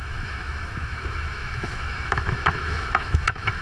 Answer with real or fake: fake